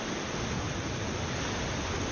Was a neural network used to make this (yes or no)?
no